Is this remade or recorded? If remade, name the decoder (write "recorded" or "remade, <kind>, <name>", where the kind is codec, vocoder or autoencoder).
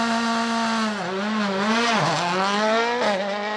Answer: recorded